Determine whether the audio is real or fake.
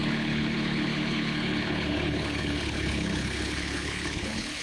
fake